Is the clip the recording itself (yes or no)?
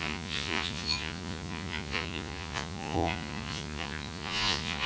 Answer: no